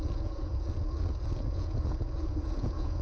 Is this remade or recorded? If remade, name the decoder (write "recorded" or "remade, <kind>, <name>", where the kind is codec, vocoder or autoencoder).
remade, vocoder, Vocos